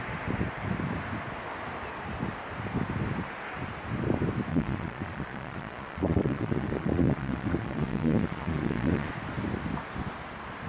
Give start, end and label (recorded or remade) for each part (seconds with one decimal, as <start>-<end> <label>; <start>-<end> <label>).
0.0-4.5 recorded; 4.5-9.1 remade; 9.1-10.7 recorded